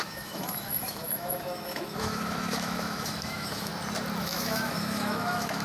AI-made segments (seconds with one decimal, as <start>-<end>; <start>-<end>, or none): 0.0-3.7; 4.2-5.6

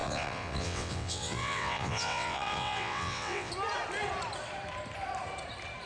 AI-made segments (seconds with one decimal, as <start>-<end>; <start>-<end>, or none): 0.0-3.5

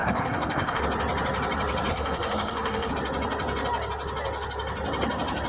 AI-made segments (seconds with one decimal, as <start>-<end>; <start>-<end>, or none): 0.0-0.8; 1.9-2.9

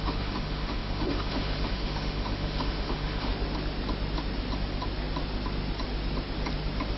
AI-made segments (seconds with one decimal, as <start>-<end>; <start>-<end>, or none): 0.0-3.3

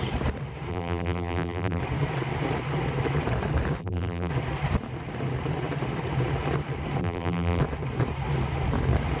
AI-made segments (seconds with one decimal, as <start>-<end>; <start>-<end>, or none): 0.7-1.8; 3.8-4.3; 7.0-7.6

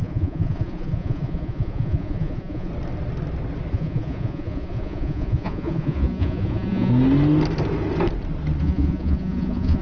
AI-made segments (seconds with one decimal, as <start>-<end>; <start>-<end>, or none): 0.0-2.7; 3.7-6.9; 8.6-9.8